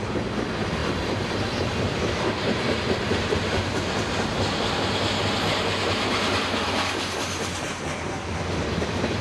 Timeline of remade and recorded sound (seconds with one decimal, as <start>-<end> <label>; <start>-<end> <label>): 0.0-0.8 recorded; 0.8-4.7 remade; 4.7-9.2 recorded